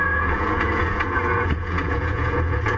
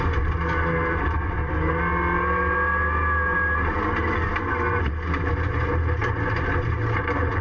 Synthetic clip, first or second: first